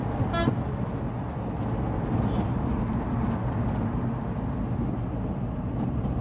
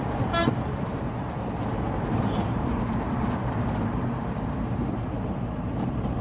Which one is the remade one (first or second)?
second